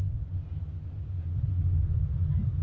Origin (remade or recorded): recorded